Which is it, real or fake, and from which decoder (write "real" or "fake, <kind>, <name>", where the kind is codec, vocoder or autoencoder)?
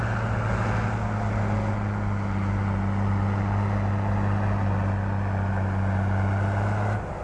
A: real